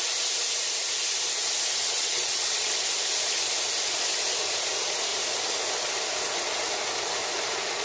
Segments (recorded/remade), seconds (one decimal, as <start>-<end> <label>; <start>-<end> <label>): 0.0-1.8 recorded; 1.8-2.7 remade; 2.7-7.8 recorded

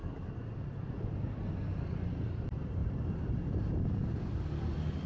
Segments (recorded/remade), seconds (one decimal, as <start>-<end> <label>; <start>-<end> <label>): 0.0-5.1 recorded

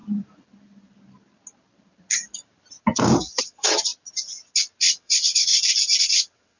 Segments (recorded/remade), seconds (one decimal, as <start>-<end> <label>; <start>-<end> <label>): 0.0-3.4 recorded; 3.4-3.9 remade; 3.9-4.8 recorded; 4.8-5.5 remade; 5.5-6.0 recorded; 6.0-6.6 remade

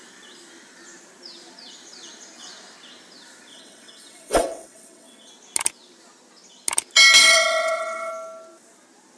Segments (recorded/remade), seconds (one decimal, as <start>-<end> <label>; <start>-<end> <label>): 0.0-3.5 recorded; 3.5-5.3 remade; 5.3-7.2 recorded; 7.2-8.1 remade; 8.1-9.2 recorded